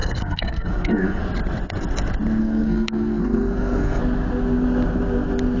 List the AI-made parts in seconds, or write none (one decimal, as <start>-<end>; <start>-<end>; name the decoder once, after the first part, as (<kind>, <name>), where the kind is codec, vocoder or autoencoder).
0.0-1.2 (codec, SNAC); 2.4-4.0